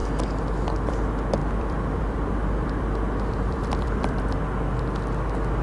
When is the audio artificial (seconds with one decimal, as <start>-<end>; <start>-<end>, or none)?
1.4-4.2